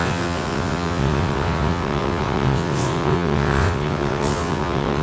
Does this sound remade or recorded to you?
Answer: remade